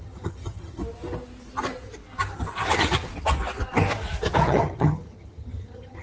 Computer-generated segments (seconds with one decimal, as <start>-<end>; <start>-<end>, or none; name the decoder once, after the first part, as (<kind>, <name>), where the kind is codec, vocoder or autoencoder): 0.0-0.8 (vocoder, HiFi-GAN); 2.7-3.1; 4.4-6.0